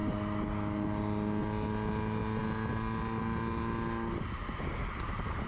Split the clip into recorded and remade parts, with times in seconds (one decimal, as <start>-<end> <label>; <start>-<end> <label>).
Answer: 0.0-5.5 recorded